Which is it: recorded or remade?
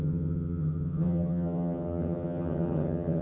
remade